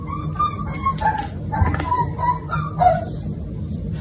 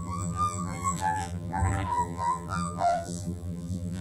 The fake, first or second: second